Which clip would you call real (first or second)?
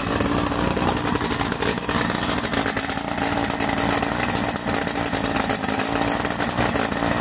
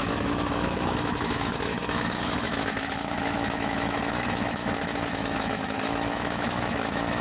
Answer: first